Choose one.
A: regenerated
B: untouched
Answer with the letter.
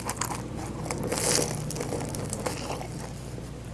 B